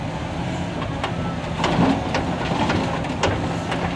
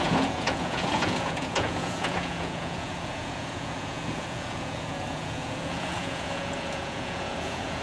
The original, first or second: first